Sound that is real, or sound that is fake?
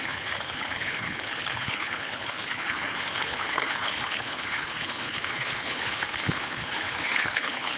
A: fake